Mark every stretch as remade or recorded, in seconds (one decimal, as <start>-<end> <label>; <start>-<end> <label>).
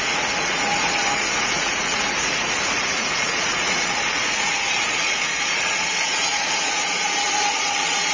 0.0-8.1 remade